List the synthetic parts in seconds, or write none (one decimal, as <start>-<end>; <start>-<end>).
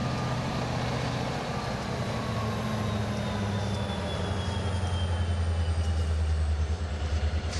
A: none